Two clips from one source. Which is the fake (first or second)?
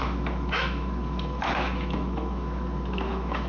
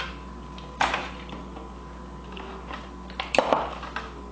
first